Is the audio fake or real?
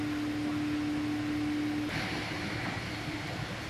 real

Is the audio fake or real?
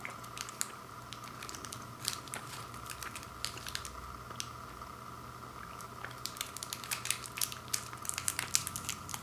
real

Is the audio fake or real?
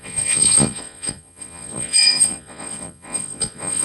fake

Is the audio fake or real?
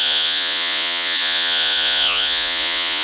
fake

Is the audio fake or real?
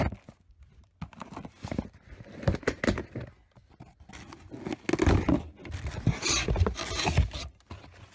real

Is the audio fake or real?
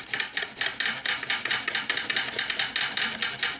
real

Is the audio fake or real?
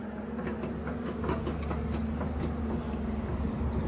real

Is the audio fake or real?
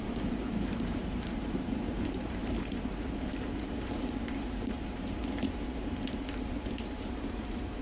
fake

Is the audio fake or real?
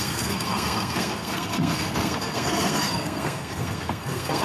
fake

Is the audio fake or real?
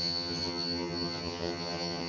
fake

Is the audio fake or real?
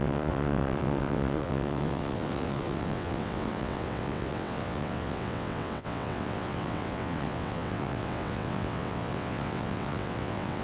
fake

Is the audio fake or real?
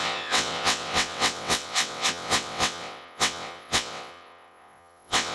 fake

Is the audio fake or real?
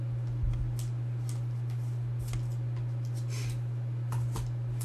real